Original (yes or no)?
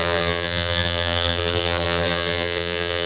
no